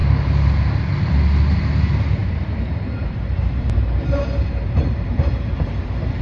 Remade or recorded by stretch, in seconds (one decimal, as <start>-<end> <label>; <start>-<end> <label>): 0.0-2.2 recorded; 2.2-6.2 remade